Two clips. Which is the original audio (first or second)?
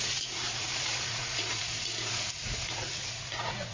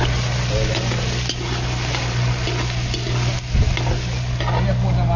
second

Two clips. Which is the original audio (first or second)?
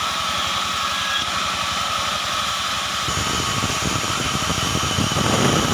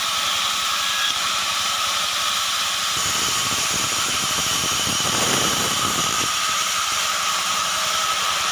first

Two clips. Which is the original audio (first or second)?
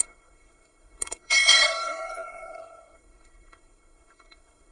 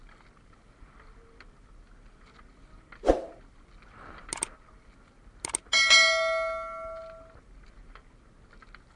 second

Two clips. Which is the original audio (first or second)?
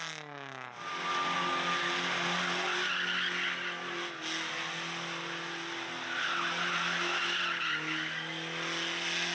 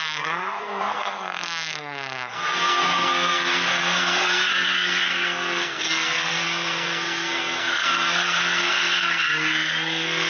first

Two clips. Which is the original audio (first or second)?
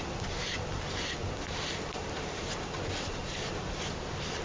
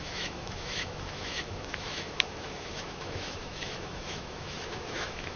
first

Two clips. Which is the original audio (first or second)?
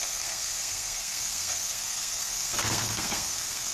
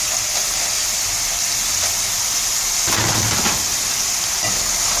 second